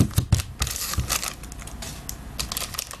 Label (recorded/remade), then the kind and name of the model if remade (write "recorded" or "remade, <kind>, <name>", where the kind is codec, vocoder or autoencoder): recorded